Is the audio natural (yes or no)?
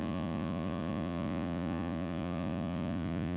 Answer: no